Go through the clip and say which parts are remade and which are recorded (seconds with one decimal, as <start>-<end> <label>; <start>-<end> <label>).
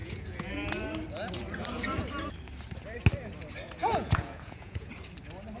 0.0-0.5 remade; 0.5-3.8 recorded; 3.8-4.9 remade; 4.9-5.6 recorded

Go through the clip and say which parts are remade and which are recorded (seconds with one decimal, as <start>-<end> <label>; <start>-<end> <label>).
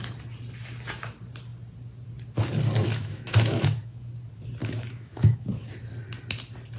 0.0-2.9 recorded; 2.9-4.1 remade; 4.1-4.6 recorded; 4.6-5.7 remade; 5.7-6.8 recorded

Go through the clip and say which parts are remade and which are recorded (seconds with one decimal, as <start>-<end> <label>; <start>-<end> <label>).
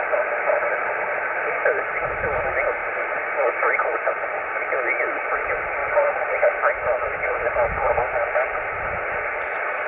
0.0-0.8 recorded; 0.8-2.1 remade; 2.1-2.8 recorded; 2.8-4.1 remade; 4.1-9.9 recorded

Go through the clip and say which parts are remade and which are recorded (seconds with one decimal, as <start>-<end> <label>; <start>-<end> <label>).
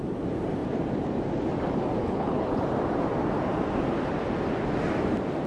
0.0-2.0 recorded; 2.0-2.6 remade; 2.6-5.5 recorded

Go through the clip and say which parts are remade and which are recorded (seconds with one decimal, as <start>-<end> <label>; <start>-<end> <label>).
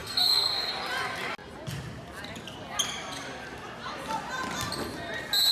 0.0-0.7 remade; 0.7-5.5 recorded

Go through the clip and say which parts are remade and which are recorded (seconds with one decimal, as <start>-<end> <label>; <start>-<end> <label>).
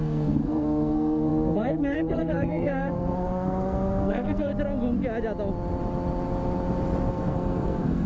0.0-4.5 remade; 4.5-7.1 recorded; 7.1-8.1 remade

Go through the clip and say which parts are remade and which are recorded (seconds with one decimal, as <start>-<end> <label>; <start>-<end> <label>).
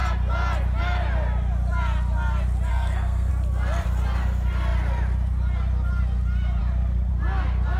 0.0-2.7 recorded; 2.7-3.3 remade; 3.3-7.8 recorded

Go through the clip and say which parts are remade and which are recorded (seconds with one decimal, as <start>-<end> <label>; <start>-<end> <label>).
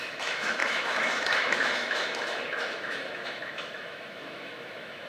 0.0-5.1 remade